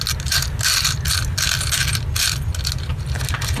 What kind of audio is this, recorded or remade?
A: recorded